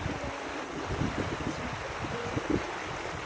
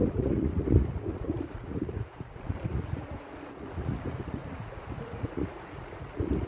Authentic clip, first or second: first